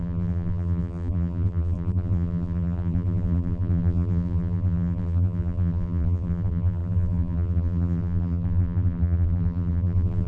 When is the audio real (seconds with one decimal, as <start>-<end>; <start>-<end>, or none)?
none